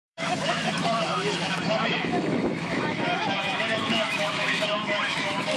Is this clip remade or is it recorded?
remade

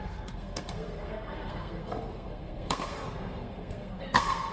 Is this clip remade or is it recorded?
remade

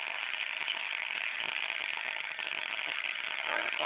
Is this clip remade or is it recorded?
remade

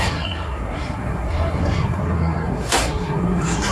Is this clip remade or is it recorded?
remade